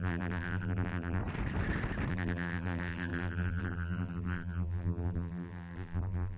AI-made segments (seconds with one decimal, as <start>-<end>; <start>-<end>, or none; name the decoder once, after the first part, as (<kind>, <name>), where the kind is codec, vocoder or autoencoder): 0.0-1.2 (vocoder, BigVGAN v2); 2.1-6.4